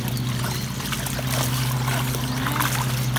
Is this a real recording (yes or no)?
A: yes